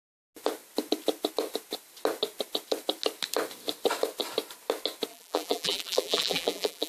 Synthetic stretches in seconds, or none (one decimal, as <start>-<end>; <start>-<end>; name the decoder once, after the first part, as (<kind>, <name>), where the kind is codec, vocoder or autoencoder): 5.1-6.9 (vocoder, BigVGAN v2)